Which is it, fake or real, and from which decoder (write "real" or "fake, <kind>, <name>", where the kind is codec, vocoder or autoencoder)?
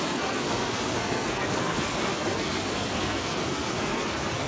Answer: fake, codec, SNAC